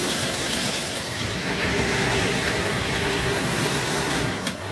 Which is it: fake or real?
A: fake